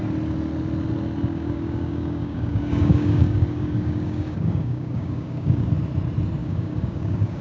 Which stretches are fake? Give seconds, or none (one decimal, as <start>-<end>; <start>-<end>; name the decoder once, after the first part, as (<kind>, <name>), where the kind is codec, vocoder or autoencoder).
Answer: 1.3-5.7 (codec, DAC); 6.4-7.4